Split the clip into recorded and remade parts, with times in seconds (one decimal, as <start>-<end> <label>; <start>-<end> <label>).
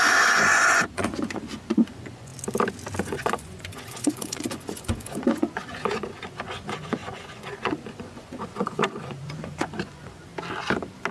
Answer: 0.0-2.3 remade; 2.3-3.0 recorded; 3.0-10.3 remade; 10.3-11.1 recorded